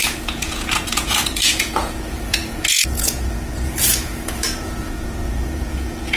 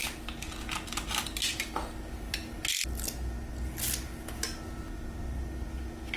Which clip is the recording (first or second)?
second